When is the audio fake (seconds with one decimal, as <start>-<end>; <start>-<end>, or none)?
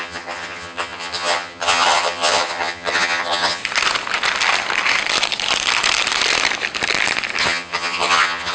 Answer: 0.0-3.6; 7.4-8.5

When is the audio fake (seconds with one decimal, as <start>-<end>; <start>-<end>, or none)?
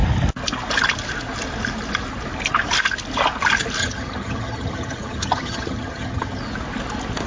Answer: 3.8-6.4